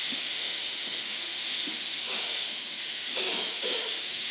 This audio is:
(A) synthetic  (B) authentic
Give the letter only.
A